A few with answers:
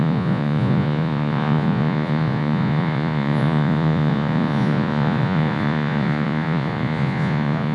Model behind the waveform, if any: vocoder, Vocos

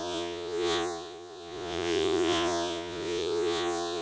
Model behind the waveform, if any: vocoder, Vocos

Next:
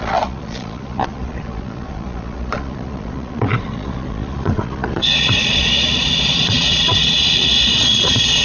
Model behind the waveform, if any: vocoder, Vocos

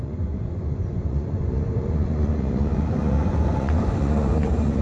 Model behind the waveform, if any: vocoder, Vocos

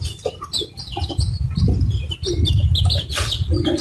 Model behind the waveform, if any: none